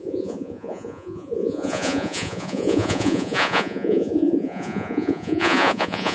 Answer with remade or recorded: remade